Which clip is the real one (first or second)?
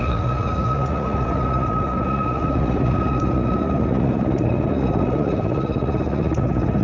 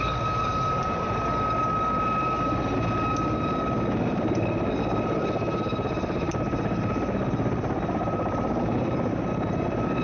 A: second